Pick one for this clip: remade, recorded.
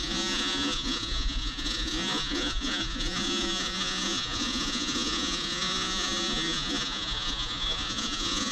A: remade